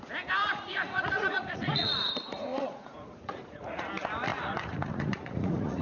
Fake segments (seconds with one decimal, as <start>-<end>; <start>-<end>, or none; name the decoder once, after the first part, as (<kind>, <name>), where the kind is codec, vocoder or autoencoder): 0.4-3.9 (vocoder, Vocos); 4.3-5.8